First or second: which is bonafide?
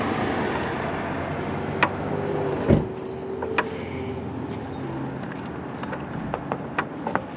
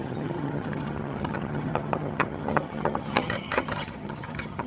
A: first